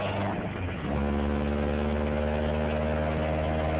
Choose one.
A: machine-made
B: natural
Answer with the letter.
B